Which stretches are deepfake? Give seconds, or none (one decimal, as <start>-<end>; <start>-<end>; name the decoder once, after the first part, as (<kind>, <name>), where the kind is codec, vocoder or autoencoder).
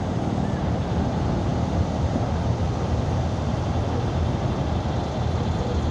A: none